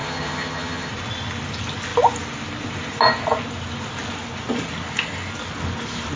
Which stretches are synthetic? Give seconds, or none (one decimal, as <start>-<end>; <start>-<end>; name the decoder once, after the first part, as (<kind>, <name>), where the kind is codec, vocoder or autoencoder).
0.0-0.9 (vocoder, HiFi-GAN)